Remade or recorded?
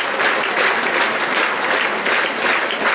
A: recorded